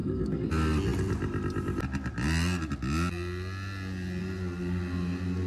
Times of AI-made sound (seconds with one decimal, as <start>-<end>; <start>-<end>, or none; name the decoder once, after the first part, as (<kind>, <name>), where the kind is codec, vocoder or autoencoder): 0.0-0.5 (codec, SNAC)